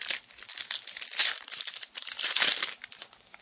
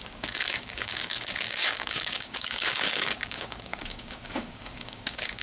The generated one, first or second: second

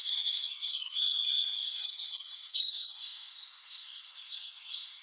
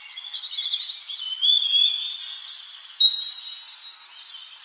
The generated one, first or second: first